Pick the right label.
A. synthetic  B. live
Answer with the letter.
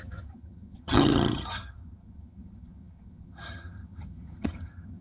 A